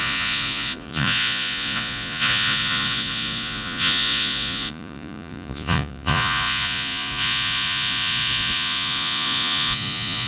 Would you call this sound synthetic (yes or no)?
yes